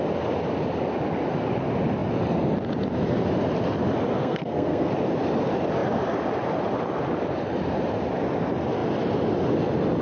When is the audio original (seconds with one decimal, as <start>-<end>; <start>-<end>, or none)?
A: 0.0-4.2; 4.9-10.0